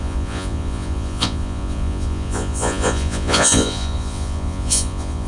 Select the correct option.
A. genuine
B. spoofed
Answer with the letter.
B